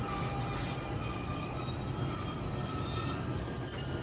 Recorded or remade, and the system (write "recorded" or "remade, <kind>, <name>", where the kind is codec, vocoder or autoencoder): recorded